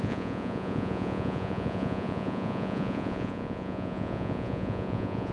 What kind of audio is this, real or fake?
fake